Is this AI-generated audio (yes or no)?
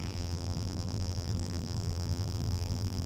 yes